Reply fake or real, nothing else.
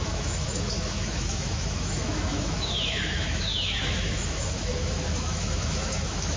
fake